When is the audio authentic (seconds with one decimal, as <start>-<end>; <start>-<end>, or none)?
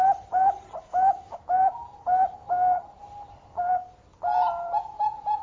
0.0-0.8; 1.4-5.4